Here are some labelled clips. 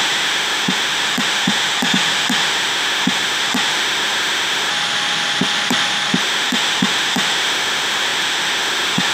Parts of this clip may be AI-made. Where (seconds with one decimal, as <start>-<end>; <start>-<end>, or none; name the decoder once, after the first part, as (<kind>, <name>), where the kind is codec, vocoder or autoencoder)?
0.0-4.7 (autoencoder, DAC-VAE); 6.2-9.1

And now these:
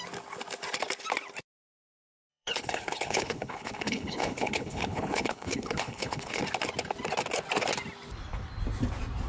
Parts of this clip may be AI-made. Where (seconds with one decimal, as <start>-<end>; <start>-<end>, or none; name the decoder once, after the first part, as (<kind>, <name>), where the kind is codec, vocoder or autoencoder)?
2.3-6.4 (codec, HILCodec)

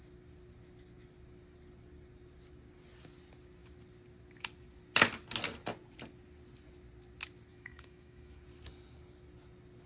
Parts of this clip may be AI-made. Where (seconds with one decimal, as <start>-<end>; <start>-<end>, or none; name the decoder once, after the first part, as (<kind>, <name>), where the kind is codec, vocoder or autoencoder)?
7.5-8.4 (autoencoder, DAC-VAE)